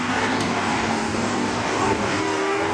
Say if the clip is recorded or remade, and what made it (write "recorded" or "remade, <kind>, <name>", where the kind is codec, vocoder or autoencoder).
remade, codec, DAC